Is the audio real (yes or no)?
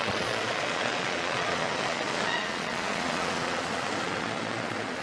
no